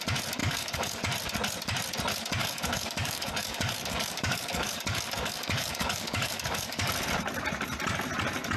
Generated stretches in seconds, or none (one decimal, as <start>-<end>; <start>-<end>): 0.4-1.0; 2.4-6.9